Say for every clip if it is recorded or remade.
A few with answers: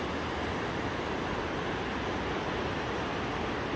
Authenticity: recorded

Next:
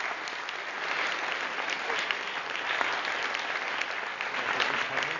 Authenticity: recorded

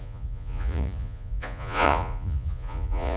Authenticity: remade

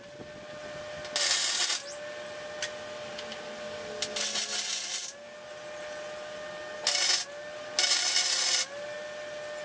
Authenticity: recorded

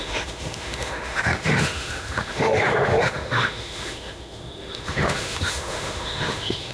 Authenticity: remade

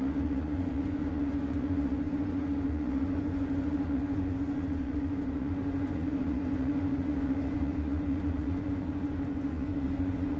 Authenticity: remade